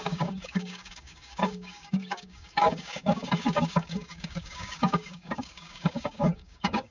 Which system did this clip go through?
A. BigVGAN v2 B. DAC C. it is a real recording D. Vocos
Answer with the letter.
B